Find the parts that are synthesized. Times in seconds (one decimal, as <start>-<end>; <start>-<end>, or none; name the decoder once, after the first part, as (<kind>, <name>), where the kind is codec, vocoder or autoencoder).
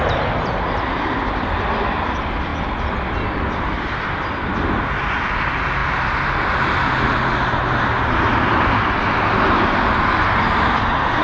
none